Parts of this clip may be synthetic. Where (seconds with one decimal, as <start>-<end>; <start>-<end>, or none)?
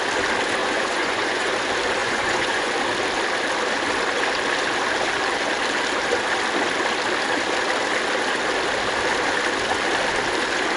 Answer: 0.6-1.5; 2.0-2.7